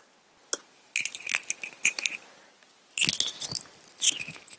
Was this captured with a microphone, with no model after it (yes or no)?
yes